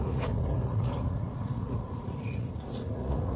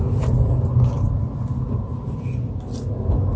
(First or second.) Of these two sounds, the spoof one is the first